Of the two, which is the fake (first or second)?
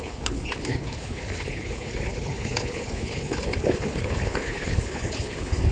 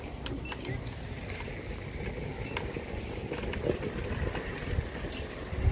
first